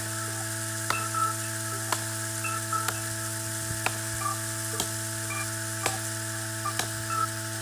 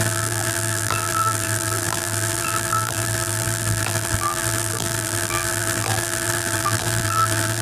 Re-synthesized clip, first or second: second